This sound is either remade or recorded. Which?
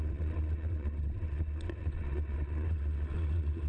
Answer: remade